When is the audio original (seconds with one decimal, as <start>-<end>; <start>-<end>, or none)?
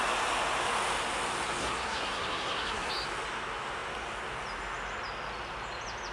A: 0.0-1.6; 2.9-6.1